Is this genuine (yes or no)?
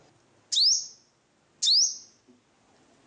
yes